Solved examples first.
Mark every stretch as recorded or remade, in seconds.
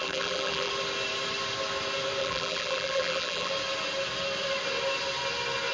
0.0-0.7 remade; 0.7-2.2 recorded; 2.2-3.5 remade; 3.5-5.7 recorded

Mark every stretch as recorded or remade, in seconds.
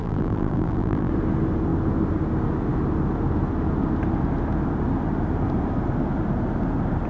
0.0-1.1 remade; 1.1-7.1 recorded